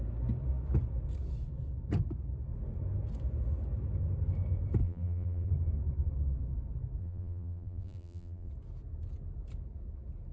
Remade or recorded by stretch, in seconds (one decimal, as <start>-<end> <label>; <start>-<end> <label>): 0.0-4.8 recorded; 4.8-5.5 remade; 5.5-7.0 recorded; 7.0-8.5 remade; 8.5-10.3 recorded